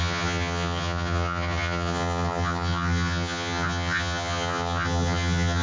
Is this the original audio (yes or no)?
no